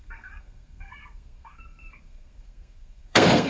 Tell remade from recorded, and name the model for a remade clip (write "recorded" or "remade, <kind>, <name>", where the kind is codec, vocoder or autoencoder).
remade, codec, SNAC